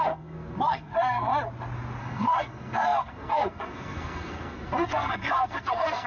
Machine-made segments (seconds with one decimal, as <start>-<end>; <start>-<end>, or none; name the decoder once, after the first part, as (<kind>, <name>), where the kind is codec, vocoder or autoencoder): 0.0-1.3 (codec, SNAC); 2.0-6.1